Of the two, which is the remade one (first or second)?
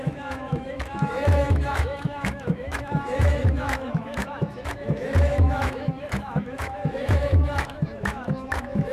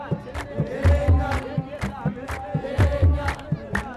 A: first